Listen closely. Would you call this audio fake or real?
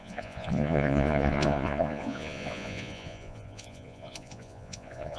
fake